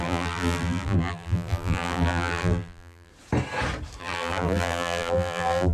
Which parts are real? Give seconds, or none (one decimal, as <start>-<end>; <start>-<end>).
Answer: 3.1-4.0